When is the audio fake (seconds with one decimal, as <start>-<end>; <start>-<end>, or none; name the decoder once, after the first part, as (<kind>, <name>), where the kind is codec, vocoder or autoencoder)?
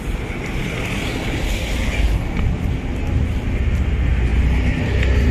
4.3-5.3 (vocoder, BigVGAN v2)